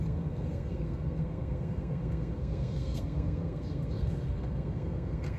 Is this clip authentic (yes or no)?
no